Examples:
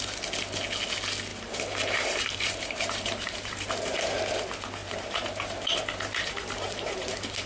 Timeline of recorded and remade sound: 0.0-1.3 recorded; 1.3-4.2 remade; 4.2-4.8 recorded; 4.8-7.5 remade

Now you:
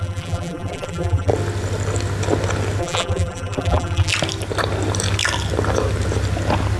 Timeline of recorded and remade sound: 0.0-1.3 remade; 1.3-2.8 recorded; 2.8-4.1 remade; 4.1-6.8 recorded

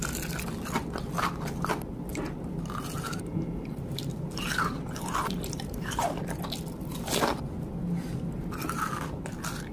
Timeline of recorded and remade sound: 0.0-2.1 recorded; 2.1-6.2 remade; 6.2-9.7 recorded

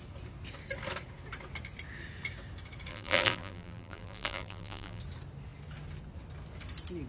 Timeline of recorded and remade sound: 0.0-2.9 recorded; 2.9-5.0 remade; 5.0-7.1 recorded